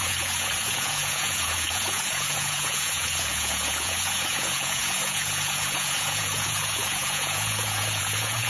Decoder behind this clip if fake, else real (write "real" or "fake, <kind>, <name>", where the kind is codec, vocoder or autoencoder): fake, vocoder, Vocos